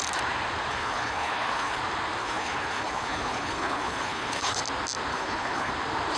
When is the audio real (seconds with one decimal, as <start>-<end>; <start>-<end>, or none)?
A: 0.0-0.7; 1.8-2.2; 4.6-5.1; 5.7-6.2